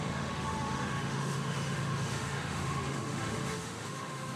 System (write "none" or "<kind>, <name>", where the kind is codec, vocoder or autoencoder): autoencoder, DAC-VAE